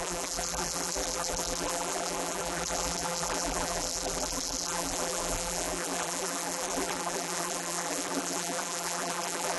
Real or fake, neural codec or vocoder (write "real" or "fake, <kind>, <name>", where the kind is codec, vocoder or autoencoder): fake, vocoder, BigVGAN v2